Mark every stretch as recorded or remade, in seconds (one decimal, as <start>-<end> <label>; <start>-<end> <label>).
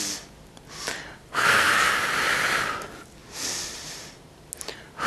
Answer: 0.0-1.3 recorded; 1.3-1.9 remade; 1.9-5.1 recorded